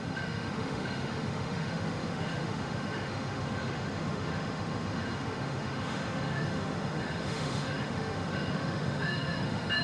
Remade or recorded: remade